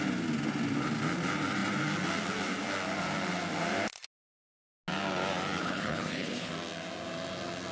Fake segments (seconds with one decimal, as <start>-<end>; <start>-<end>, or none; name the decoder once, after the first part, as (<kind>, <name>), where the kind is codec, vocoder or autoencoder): 5.6-6.5 (codec, HILCodec)